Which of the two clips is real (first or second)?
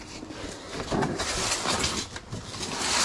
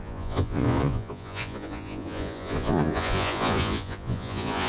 first